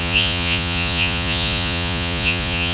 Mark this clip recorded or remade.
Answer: remade